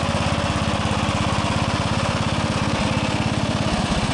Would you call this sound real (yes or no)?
yes